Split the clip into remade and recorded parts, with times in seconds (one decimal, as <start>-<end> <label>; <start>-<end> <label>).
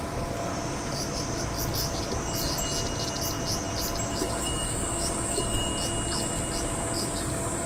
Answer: 0.0-0.5 remade; 0.5-4.1 recorded; 4.1-5.7 remade; 5.7-7.2 recorded; 7.2-7.7 remade